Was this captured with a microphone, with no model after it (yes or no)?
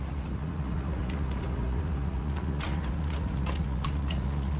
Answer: no